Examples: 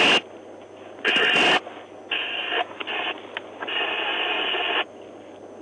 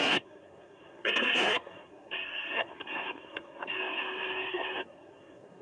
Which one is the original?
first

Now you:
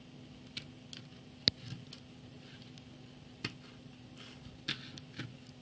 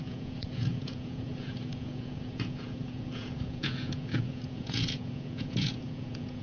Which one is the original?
first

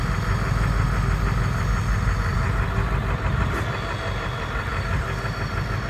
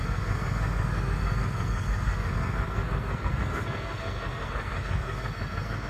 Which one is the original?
first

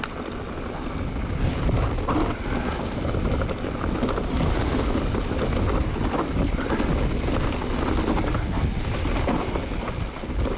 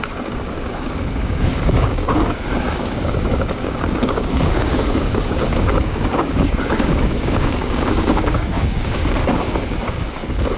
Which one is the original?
first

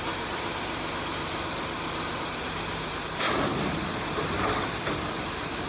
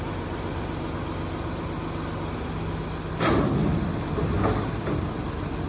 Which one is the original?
second